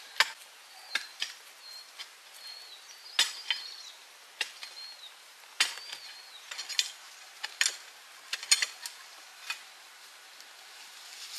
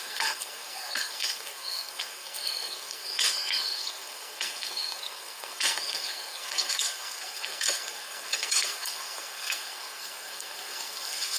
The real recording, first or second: first